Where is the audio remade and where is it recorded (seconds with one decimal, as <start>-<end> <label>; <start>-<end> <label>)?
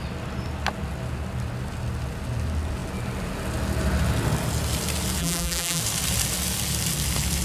0.0-5.2 recorded; 5.2-5.8 remade; 5.8-7.4 recorded